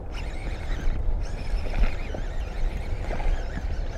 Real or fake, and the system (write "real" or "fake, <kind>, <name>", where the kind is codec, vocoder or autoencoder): real